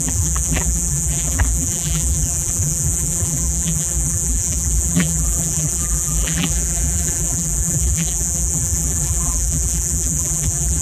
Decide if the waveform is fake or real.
fake